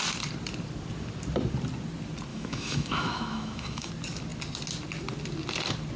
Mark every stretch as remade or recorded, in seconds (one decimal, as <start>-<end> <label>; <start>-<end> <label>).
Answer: 0.0-2.3 recorded; 2.3-3.9 remade; 3.9-6.0 recorded